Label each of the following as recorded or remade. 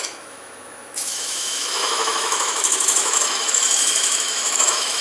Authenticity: remade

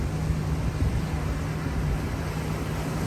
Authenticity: recorded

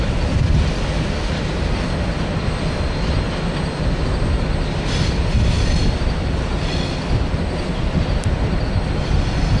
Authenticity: recorded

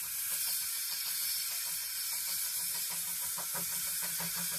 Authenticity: recorded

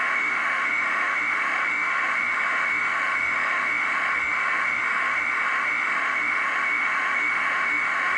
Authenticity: remade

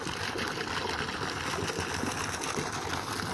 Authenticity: recorded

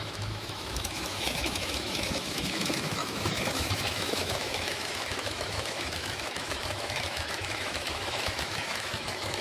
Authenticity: remade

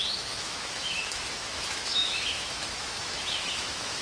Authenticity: remade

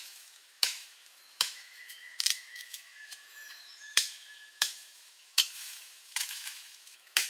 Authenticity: remade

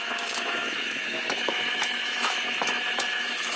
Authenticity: remade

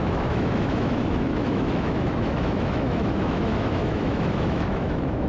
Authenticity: remade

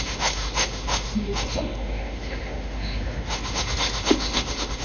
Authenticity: remade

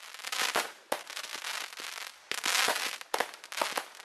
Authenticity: recorded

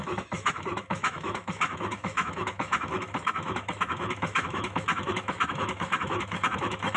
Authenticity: remade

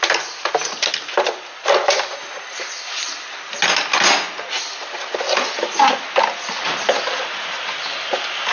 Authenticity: recorded